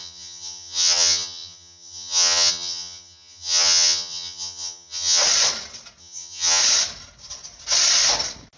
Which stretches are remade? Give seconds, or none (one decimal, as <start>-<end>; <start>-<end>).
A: 0.0-5.2; 6.0-6.6